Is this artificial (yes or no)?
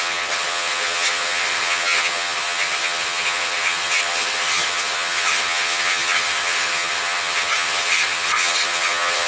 yes